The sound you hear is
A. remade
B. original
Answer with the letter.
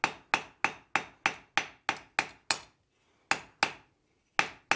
B